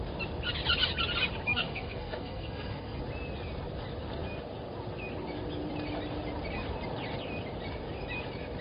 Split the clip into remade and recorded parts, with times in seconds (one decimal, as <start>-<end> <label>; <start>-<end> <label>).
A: 0.0-1.5 recorded; 1.5-3.0 remade; 3.0-8.6 recorded